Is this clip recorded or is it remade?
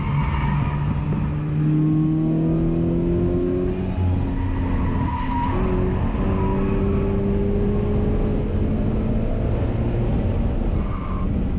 recorded